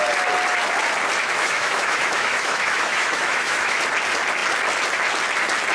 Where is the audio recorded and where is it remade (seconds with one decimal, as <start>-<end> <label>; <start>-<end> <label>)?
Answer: 0.0-1.2 recorded; 1.2-3.8 remade; 3.8-5.7 recorded